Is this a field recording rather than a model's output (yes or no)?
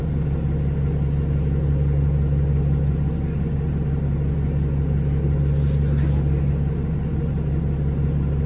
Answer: yes